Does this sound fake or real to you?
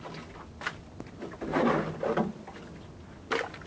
real